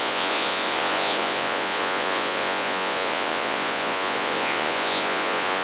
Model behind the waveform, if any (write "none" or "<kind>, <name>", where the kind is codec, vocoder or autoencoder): vocoder, Vocos